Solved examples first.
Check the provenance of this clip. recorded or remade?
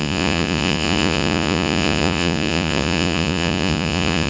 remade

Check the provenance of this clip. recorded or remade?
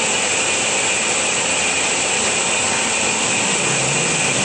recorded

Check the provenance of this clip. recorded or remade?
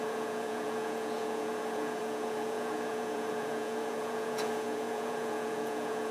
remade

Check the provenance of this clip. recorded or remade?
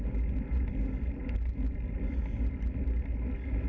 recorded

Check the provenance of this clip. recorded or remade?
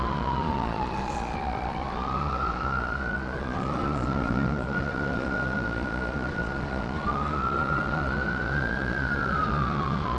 remade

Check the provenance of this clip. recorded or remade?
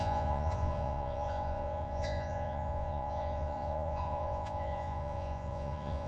remade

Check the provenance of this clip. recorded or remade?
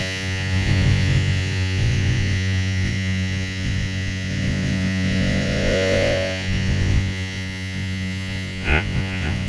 remade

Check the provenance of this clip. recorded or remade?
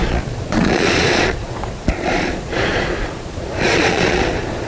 remade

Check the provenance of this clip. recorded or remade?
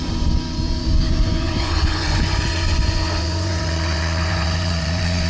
remade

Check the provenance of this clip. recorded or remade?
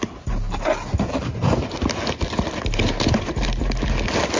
recorded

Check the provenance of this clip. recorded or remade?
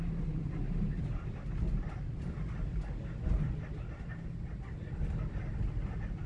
recorded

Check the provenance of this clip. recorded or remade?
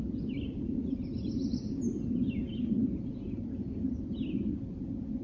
recorded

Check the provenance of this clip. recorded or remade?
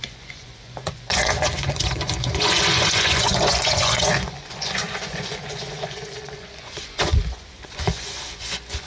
remade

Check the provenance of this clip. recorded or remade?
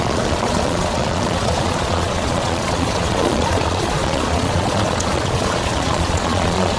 remade